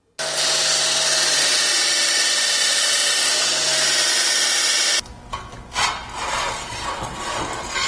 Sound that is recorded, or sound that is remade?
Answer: recorded